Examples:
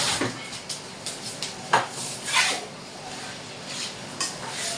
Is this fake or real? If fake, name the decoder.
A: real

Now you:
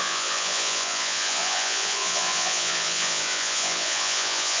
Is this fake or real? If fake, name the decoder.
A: fake, vocoder, Vocos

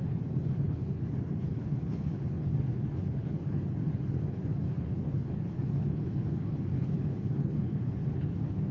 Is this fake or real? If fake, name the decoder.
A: fake, codec, HILCodec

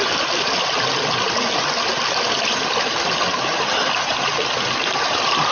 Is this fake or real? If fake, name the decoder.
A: real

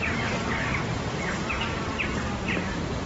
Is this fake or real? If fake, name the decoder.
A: fake, vocoder, BigVGAN v2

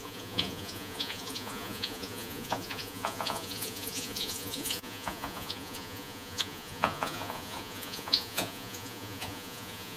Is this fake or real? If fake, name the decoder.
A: fake, vocoder, Vocos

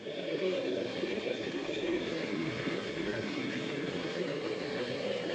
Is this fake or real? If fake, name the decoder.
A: fake, codec, SNAC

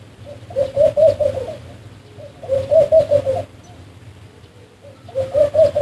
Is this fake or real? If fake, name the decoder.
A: real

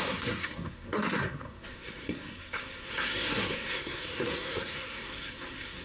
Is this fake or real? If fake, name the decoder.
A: fake, codec, SNAC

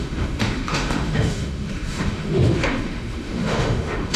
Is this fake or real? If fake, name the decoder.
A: fake, autoencoder, DAC-VAE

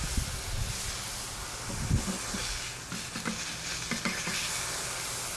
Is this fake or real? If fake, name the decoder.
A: real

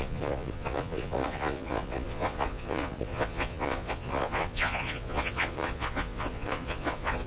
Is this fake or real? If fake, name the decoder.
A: fake, vocoder, Vocos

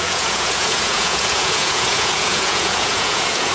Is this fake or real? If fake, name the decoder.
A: fake, vocoder, Vocos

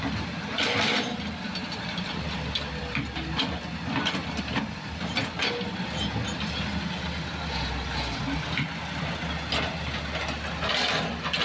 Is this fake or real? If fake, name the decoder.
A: real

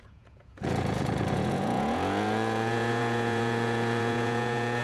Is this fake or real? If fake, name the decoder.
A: fake, vocoder, Vocos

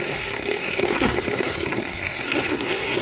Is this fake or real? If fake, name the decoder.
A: fake, codec, SNAC